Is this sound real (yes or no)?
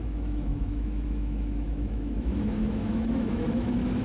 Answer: no